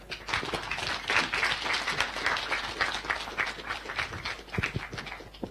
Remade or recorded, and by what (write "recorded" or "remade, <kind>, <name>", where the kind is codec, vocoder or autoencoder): recorded